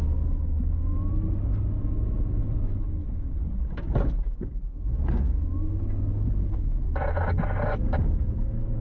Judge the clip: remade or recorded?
recorded